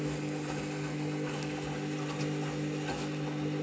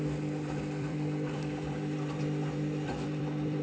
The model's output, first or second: second